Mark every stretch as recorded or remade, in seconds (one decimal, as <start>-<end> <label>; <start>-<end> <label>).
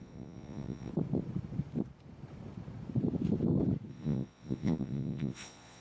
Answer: 0.0-0.9 remade; 0.9-3.9 recorded; 3.9-5.8 remade